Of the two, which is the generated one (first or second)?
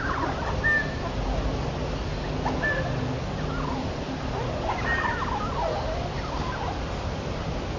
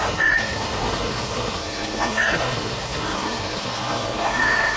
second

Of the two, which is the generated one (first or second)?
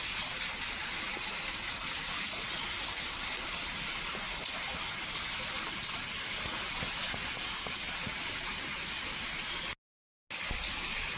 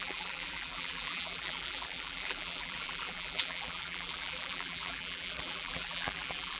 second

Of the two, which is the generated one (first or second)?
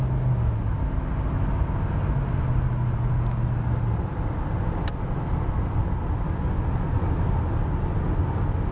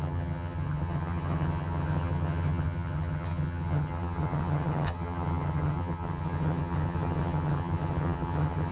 second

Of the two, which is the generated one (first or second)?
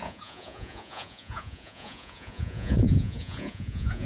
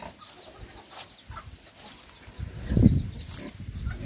first